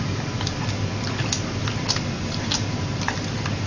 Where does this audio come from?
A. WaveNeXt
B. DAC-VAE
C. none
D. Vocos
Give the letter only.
C